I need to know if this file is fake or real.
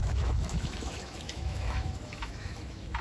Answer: fake